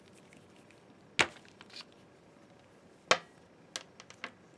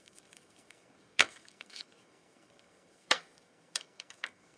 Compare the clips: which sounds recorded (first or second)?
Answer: first